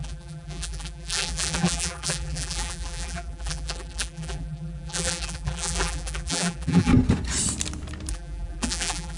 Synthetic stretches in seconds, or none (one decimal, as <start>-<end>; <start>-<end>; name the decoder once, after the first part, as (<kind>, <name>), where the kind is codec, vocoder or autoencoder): 0.0-6.9 (vocoder, BigVGAN v2); 8.1-9.2